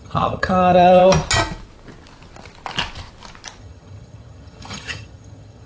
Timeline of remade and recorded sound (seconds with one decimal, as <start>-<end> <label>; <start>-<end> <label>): 0.0-1.0 remade; 1.0-3.6 recorded; 3.6-5.7 remade